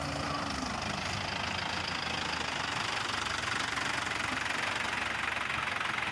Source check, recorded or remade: recorded